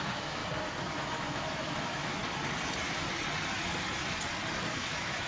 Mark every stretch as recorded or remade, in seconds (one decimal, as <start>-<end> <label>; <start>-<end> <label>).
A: 0.0-0.4 remade; 0.4-1.0 recorded; 1.0-2.2 remade; 2.2-4.7 recorded; 4.7-5.3 remade